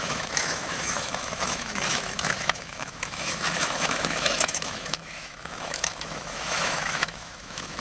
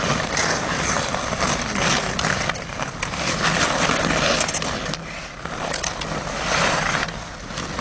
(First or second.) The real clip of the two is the second